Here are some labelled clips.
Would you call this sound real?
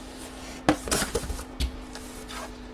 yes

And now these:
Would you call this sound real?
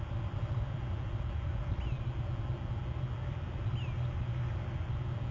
yes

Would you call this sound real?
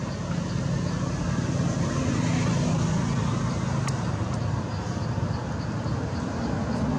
yes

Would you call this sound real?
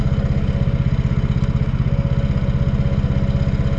yes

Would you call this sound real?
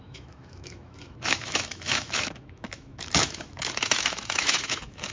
no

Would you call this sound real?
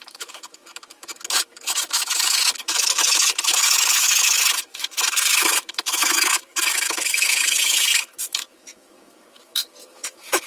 no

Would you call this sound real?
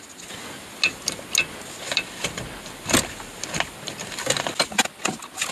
yes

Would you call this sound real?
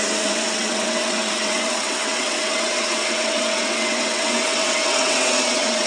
no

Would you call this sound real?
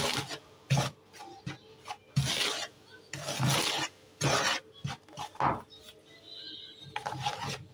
yes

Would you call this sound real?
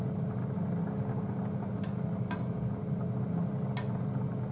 yes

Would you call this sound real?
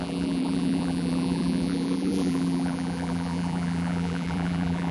no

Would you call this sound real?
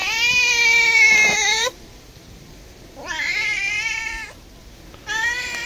no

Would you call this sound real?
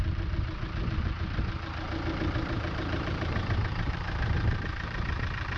no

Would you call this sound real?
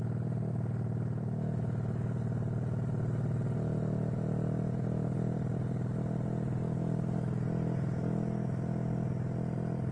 yes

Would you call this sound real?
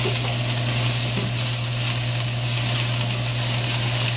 yes